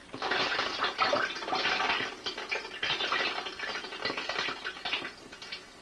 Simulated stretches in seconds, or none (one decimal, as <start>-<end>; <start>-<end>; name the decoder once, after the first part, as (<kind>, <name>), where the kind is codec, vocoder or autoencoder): none